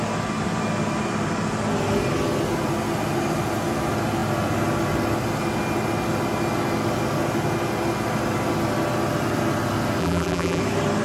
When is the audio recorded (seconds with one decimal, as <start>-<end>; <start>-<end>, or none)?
0.0-10.0; 10.6-11.0